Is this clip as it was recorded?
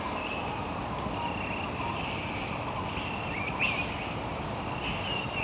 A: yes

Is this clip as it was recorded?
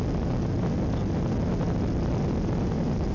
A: yes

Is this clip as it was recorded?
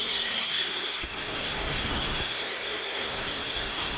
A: no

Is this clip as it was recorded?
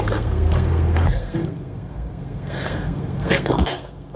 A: no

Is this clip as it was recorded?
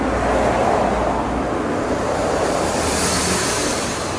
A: yes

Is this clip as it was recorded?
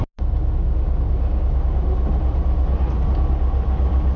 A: yes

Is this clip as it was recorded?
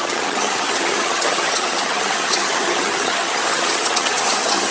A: no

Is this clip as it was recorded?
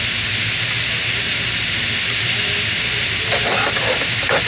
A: yes